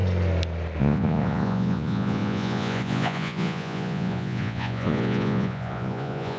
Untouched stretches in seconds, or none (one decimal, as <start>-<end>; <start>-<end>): 0.0-0.8